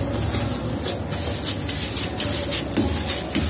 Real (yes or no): yes